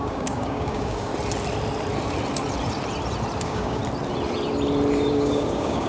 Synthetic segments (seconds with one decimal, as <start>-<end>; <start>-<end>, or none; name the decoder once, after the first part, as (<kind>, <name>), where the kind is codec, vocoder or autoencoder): 0.0-1.1 (codec, DAC); 3.4-3.8; 5.1-5.9